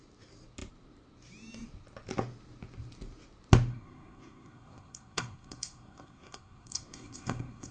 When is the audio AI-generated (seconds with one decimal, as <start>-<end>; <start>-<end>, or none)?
3.7-7.7